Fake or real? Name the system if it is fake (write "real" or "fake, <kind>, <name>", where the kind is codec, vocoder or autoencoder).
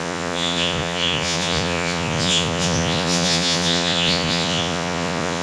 fake, vocoder, Vocos